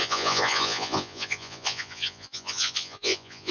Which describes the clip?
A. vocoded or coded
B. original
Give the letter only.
A